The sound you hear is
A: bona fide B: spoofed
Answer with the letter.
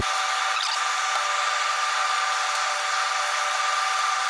A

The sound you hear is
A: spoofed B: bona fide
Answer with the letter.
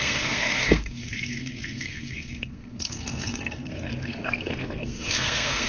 A